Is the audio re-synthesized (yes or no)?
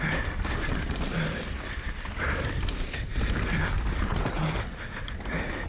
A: no